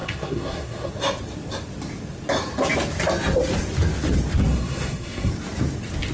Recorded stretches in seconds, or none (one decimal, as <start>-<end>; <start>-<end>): 0.9-4.5; 5.3-6.1